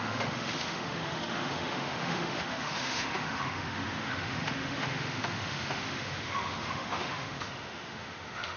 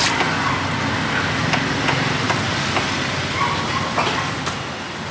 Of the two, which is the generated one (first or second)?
first